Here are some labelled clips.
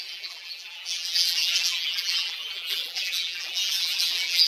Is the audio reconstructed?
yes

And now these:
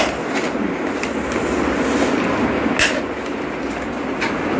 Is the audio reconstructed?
no